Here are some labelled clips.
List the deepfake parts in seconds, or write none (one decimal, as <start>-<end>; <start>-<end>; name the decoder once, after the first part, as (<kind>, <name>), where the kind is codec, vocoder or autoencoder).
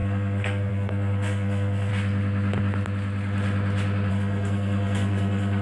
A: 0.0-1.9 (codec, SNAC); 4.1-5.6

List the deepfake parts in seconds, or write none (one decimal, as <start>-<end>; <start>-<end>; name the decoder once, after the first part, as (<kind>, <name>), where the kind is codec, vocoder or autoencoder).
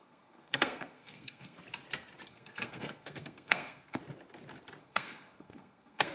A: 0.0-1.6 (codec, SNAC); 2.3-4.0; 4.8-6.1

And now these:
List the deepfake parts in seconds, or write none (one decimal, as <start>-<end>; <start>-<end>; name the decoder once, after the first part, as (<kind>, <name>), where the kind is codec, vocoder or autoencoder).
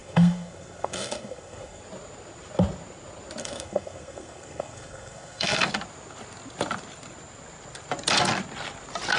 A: 0.0-1.8 (codec, SNAC); 3.4-5.6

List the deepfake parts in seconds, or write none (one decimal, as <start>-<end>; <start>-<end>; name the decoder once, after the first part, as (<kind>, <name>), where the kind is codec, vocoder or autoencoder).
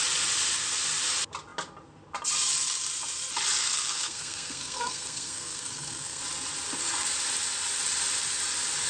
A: 3.6-6.2 (codec, SNAC)